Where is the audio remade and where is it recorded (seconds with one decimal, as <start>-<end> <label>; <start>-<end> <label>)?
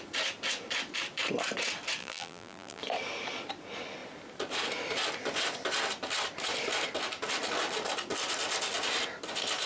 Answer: 0.0-2.0 recorded; 2.0-2.8 remade; 2.8-9.7 recorded